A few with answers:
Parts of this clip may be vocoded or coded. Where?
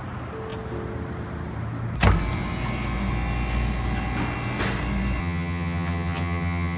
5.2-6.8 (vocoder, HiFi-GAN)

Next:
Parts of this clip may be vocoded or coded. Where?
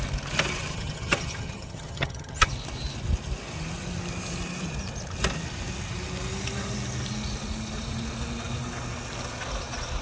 0.7-2.5 (vocoder, HiFi-GAN)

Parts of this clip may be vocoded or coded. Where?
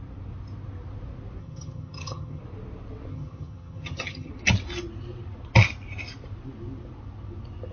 1.4-2.4 (vocoder, HiFi-GAN); 3.1-4.3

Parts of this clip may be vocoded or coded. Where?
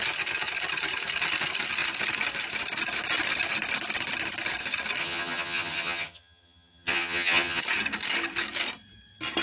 5.0-7.6 (vocoder, HiFi-GAN)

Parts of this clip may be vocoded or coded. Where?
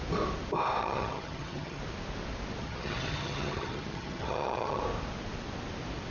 0.8-1.8 (vocoder, HiFi-GAN); 2.6-4.8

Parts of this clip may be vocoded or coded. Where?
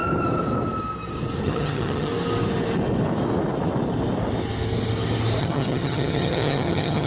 1.4-2.1 (vocoder, HiFi-GAN); 5.4-7.1